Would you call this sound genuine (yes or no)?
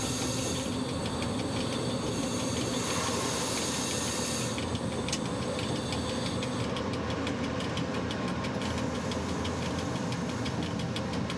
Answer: yes